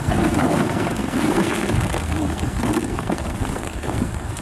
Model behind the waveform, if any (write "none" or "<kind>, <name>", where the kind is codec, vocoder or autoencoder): codec, SNAC